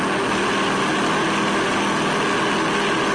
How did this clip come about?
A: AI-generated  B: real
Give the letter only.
B